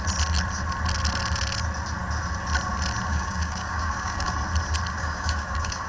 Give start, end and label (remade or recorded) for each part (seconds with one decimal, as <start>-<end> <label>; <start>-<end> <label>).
0.0-3.1 recorded; 3.1-4.3 remade; 4.3-5.0 recorded; 5.0-5.9 remade